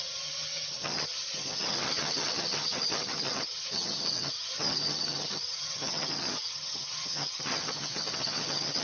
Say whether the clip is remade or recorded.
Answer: remade